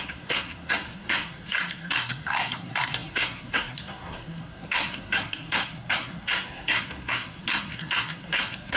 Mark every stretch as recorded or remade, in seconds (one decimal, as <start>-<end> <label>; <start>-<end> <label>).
0.0-8.8 remade